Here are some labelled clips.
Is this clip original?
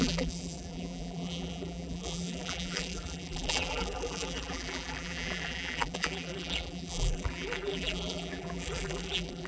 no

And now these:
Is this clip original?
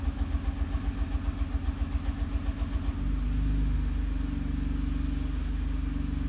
yes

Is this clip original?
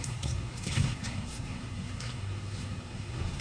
no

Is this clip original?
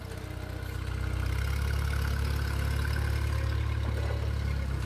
yes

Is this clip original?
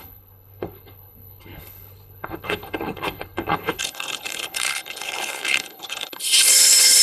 no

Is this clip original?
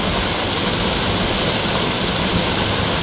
yes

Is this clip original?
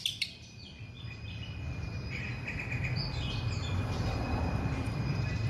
no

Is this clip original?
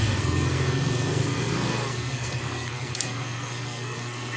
no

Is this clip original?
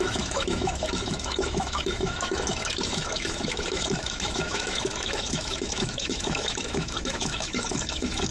no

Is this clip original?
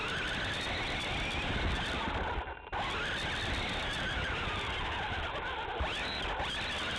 yes